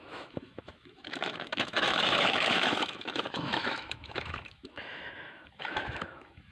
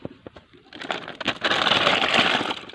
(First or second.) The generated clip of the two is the first